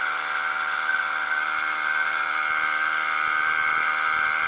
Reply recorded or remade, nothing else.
recorded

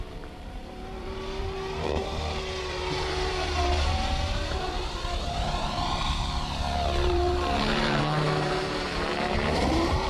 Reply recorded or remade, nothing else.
remade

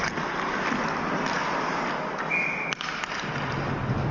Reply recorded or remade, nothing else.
recorded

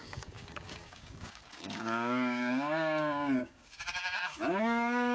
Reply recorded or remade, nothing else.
remade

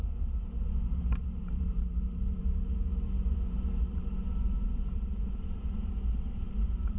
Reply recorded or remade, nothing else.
remade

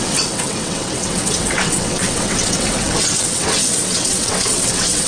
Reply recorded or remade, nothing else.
remade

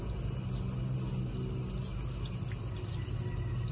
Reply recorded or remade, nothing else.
recorded